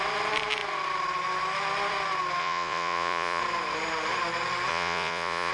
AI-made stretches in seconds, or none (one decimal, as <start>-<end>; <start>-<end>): 2.4-3.4; 4.7-5.5